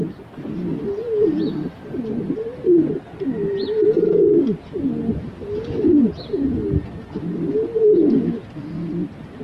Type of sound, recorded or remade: recorded